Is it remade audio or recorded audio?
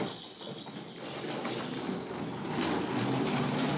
recorded